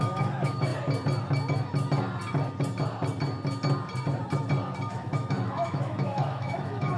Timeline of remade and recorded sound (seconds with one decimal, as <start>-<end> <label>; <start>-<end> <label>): 0.0-0.7 remade; 0.7-4.9 recorded; 4.9-7.0 remade